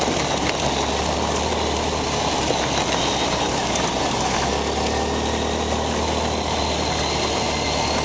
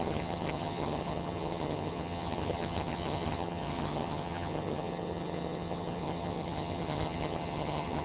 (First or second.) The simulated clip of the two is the second